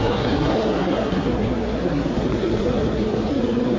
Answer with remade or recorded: remade